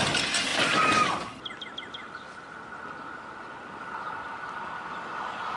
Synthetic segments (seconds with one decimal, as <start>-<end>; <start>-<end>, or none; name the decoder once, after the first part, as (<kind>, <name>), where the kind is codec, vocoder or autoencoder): none